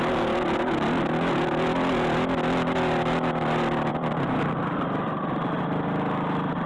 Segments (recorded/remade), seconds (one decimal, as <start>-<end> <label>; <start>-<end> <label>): 0.0-3.9 recorded; 3.9-5.6 remade; 5.6-6.7 recorded